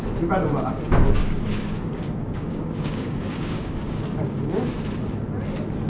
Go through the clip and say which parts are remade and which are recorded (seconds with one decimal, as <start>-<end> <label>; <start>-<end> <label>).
0.0-1.2 recorded; 1.2-4.7 remade; 4.7-5.9 recorded